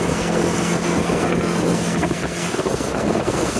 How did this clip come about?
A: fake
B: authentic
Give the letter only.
A